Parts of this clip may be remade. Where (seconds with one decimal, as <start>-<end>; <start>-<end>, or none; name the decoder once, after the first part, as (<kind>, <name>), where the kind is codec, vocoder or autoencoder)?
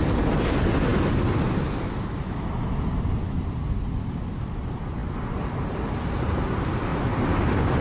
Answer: 6.9-7.8 (vocoder, BigVGAN v2)